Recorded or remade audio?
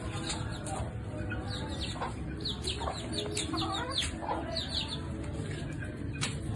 recorded